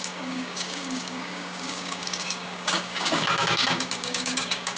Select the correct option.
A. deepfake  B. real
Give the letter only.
A